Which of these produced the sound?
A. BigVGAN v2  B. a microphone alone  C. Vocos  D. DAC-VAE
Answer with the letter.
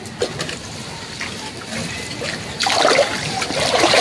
B